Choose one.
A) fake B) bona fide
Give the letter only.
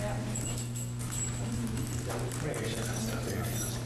B